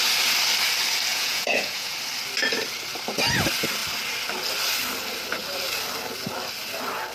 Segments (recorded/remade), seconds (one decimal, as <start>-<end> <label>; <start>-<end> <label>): 0.0-1.1 recorded; 1.1-1.9 remade; 1.9-7.1 recorded